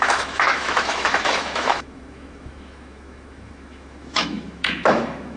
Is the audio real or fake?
fake